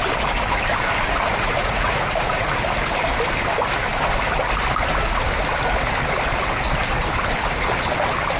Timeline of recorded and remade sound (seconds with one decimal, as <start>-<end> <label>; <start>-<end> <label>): 0.0-1.3 recorded; 1.3-2.5 remade; 2.5-8.4 recorded